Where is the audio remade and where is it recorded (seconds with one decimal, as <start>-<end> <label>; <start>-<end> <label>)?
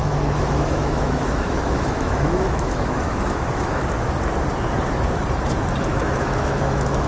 0.0-3.8 remade; 3.8-5.9 recorded; 5.9-7.1 remade